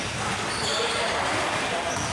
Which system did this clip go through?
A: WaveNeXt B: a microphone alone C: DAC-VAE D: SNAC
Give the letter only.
B